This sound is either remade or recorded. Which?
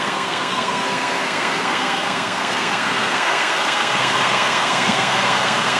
remade